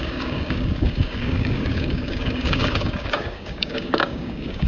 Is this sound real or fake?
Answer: fake